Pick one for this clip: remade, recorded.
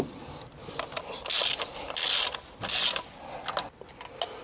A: recorded